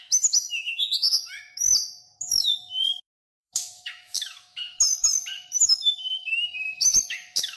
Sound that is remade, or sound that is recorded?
remade